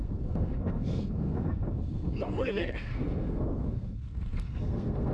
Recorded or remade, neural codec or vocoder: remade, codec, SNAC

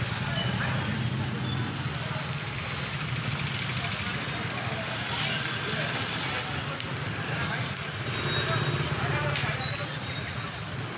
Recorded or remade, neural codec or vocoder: recorded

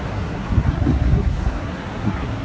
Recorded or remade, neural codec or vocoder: remade, codec, SNAC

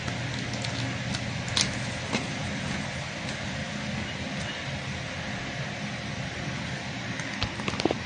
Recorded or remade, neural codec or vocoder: recorded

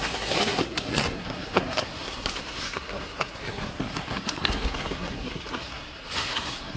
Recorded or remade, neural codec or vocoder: remade, codec, SNAC